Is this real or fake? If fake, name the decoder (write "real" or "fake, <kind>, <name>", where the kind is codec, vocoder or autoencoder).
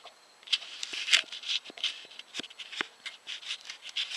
fake, vocoder, BigVGAN v2